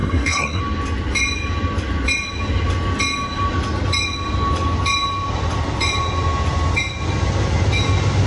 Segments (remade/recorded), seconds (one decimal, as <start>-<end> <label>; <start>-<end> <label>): 0.0-0.6 remade; 0.6-8.3 recorded